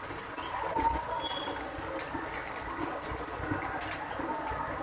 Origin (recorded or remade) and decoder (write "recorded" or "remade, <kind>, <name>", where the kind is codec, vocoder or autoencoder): recorded